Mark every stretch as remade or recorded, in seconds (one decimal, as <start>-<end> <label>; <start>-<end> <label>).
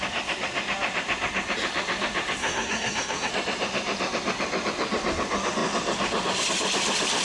0.0-2.4 recorded; 2.4-3.3 remade; 3.3-7.2 recorded